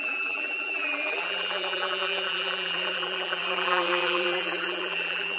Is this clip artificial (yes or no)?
yes